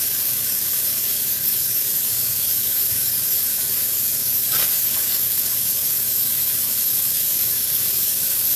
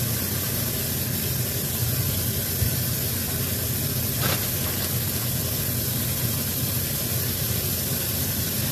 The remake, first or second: first